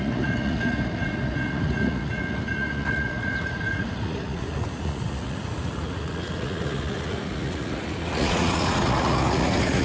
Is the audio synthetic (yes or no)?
yes